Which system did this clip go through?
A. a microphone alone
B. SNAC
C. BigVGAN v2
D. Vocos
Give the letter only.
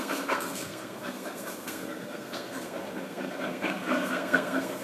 B